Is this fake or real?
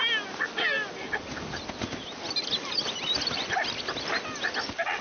real